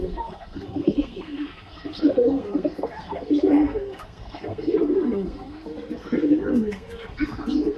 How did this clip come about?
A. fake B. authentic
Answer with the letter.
A